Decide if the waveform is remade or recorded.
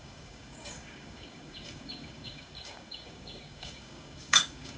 remade